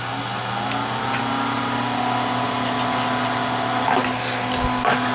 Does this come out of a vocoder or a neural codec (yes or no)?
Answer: no